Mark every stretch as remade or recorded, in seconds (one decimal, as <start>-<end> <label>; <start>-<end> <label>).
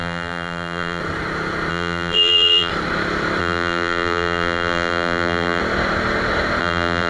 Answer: 0.0-1.0 remade; 1.0-1.7 recorded; 1.7-2.7 remade; 2.7-3.4 recorded; 3.4-5.6 remade; 5.6-6.6 recorded; 6.6-7.1 remade